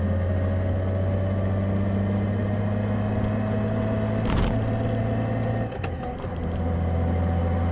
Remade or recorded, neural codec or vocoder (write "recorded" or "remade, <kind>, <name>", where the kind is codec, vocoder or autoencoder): recorded